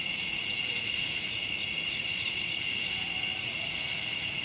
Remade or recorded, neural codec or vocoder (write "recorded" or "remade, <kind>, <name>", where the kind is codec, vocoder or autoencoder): remade, vocoder, Vocos